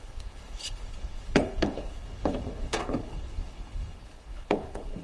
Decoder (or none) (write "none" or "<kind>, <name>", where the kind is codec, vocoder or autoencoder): codec, HILCodec